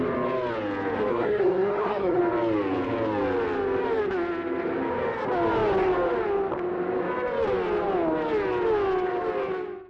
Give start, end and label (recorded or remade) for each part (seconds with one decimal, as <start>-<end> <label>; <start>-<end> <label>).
0.0-1.1 recorded; 1.1-2.2 remade; 2.2-9.9 recorded